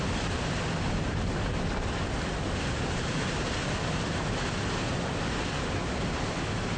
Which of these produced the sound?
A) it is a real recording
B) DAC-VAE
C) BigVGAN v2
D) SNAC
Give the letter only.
A